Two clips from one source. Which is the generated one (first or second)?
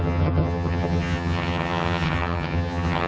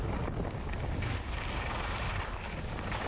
first